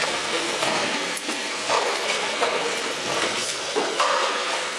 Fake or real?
fake